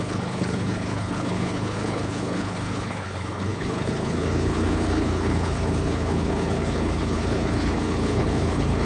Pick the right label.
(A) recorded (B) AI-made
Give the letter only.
B